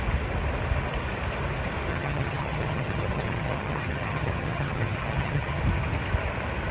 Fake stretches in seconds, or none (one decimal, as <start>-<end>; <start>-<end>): 1.9-5.6